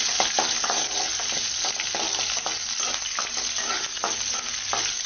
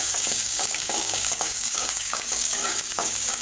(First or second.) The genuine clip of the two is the first